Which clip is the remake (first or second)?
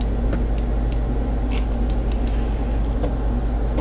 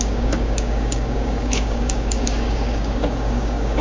second